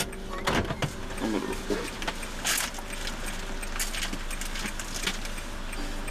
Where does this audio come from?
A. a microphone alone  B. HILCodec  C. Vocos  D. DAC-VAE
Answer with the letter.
A